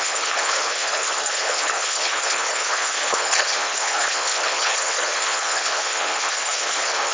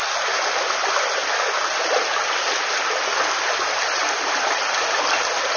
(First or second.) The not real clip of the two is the first